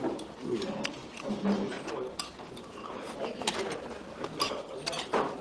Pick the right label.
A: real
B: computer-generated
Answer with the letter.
A